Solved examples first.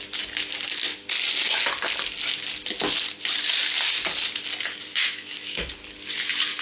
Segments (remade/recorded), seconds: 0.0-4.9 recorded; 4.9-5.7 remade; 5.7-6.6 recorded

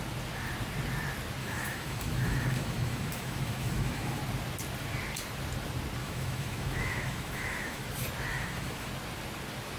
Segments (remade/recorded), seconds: 0.0-1.4 recorded; 1.4-4.2 remade; 4.2-6.0 recorded; 6.0-7.9 remade; 7.9-8.3 recorded; 8.3-8.9 remade; 8.9-9.8 recorded

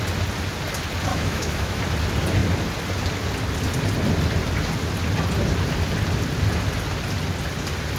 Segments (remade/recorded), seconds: 0.0-1.1 recorded; 1.1-1.8 remade; 1.8-8.0 recorded

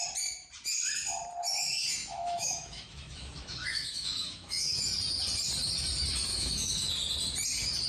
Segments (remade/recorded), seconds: 0.0-2.0 recorded; 2.0-4.9 remade; 4.9-6.3 recorded; 6.3-6.9 remade; 6.9-7.9 recorded

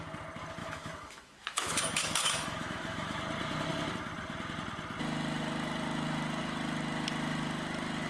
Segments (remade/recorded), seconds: 0.0-0.6 recorded; 0.6-3.2 remade; 3.2-8.1 recorded

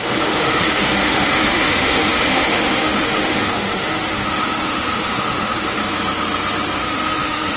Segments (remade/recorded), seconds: 0.0-5.8 remade; 5.8-6.8 recorded; 6.8-7.6 remade